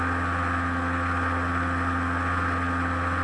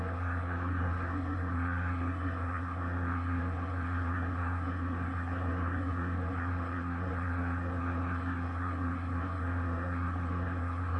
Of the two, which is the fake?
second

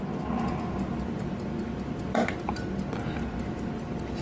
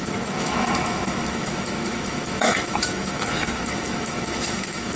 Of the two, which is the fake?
second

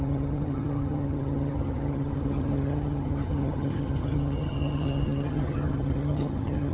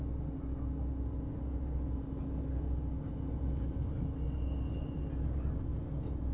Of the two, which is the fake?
first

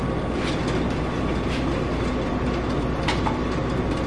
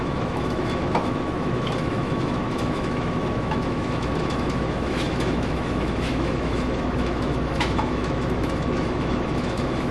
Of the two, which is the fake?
second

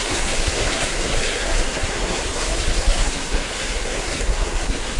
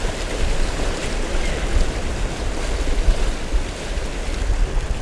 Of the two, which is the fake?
first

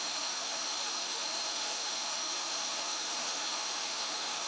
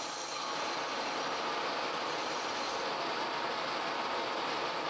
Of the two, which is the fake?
first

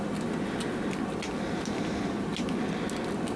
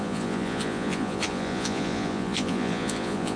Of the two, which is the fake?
second